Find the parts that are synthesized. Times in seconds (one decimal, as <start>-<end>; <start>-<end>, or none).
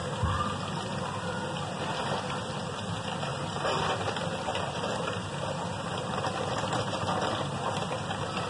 3.3-3.8; 4.5-5.3; 5.9-6.4